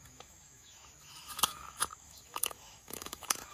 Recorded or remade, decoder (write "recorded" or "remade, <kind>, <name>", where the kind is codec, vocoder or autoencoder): remade, autoencoder, DAC-VAE